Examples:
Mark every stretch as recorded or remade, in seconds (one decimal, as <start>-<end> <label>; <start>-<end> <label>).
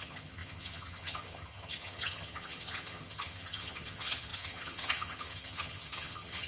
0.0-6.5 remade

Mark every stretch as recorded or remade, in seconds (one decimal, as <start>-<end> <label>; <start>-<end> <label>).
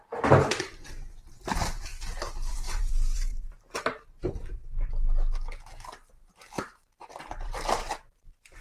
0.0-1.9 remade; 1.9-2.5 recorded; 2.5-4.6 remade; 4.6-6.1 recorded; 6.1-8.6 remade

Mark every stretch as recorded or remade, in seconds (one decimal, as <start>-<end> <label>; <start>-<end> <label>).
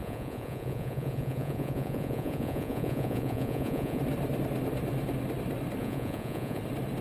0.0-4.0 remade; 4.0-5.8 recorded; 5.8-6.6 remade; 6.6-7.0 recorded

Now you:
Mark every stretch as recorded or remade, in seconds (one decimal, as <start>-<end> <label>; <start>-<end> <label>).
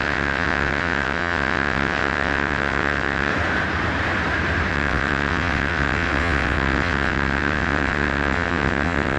0.0-3.3 remade; 3.3-4.7 recorded; 4.7-9.2 remade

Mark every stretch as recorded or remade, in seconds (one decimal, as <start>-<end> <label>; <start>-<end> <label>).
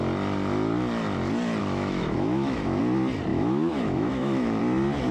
0.0-1.6 recorded; 1.6-2.8 remade; 2.8-3.3 recorded; 3.3-4.6 remade; 4.6-5.1 recorded